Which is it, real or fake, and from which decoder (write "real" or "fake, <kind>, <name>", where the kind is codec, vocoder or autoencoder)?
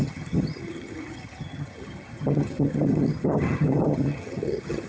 fake, vocoder, HiFi-GAN